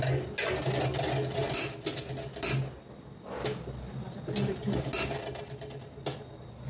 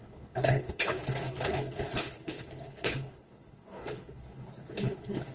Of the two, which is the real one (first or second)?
first